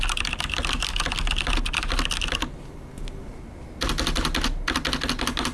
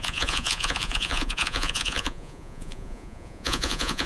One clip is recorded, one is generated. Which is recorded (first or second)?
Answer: first